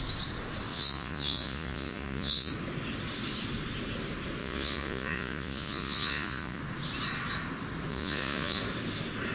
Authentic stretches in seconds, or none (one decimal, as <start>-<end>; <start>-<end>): 0.0-0.7; 2.5-4.4; 6.6-7.9; 8.6-9.3